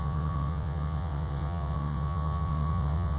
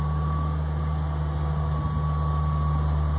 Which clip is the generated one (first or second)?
first